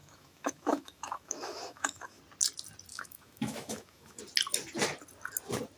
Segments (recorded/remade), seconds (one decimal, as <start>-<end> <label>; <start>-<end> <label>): 0.0-2.2 remade; 2.2-2.9 recorded; 2.9-4.2 remade; 4.2-5.8 recorded